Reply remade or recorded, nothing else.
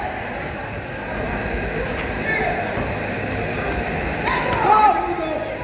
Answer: recorded